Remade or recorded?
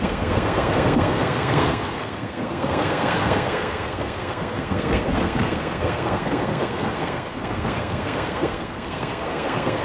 remade